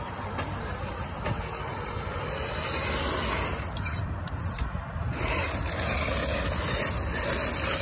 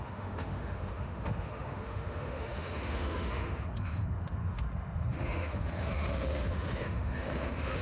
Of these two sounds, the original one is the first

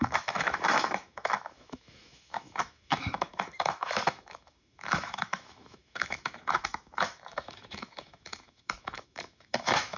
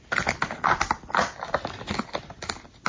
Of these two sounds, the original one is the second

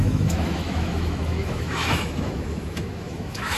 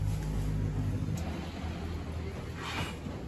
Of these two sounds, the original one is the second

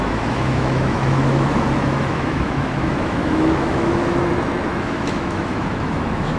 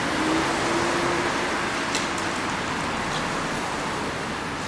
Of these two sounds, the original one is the second